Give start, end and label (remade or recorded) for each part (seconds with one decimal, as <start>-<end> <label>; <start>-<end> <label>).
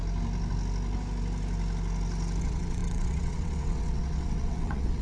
0.0-2.4 recorded; 2.4-5.0 remade